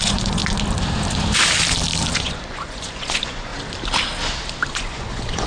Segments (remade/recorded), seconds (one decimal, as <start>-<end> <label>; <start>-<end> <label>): 0.0-0.4 remade; 0.4-2.1 recorded; 2.1-3.5 remade; 3.5-4.7 recorded; 4.7-5.5 remade